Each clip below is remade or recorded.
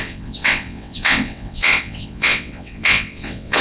remade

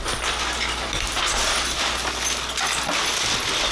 recorded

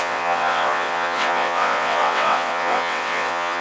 remade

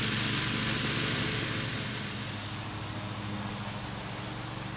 recorded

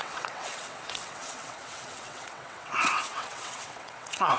remade